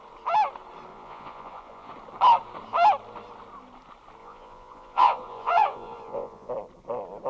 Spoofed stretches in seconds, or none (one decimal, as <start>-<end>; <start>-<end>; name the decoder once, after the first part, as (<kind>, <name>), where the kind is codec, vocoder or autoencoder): 0.9-1.9 (vocoder, Vocos); 4.2-6.5